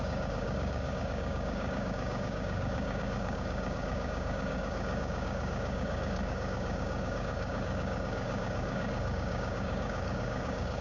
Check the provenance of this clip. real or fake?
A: fake